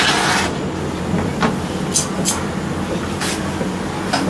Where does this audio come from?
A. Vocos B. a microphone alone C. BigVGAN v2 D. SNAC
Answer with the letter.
B